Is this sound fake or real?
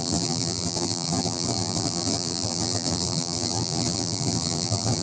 fake